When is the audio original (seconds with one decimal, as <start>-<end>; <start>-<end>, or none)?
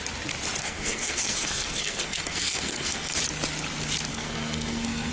0.0-0.6; 3.2-4.1